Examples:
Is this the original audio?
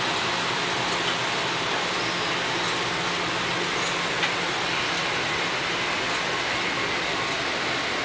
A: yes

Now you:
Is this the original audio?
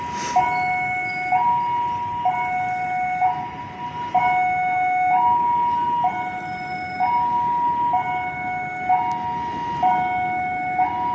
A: yes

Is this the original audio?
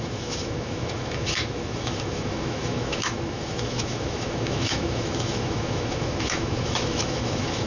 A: no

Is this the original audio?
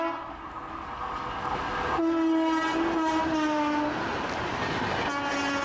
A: yes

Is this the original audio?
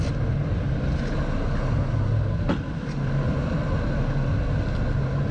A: yes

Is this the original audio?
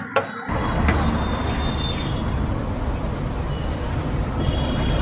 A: yes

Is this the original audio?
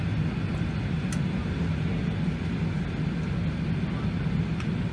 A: yes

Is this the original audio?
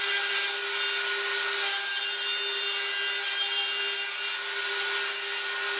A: yes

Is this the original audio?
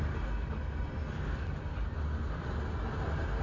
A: yes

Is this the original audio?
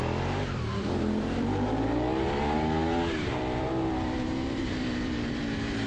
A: no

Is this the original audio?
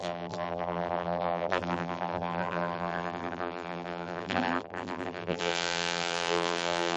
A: no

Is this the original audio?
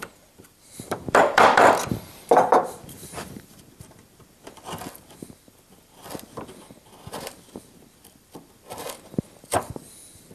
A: no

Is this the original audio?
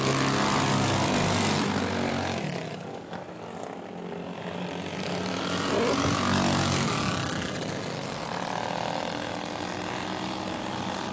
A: yes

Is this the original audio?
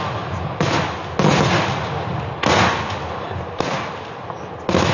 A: yes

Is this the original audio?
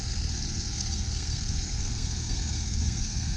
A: no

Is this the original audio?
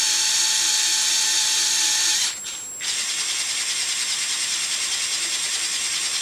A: yes